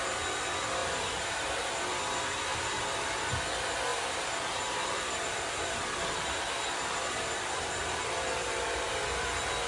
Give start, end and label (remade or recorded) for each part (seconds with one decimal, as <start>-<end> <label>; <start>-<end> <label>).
0.0-0.8 recorded; 0.8-1.8 remade; 1.8-2.5 recorded; 2.5-3.3 remade; 3.3-3.9 recorded; 3.9-8.9 remade; 8.9-9.7 recorded